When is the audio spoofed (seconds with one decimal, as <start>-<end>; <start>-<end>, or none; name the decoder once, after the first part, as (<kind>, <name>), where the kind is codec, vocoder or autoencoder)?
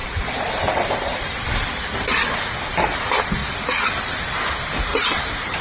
4.9-5.6 (vocoder, BigVGAN v2)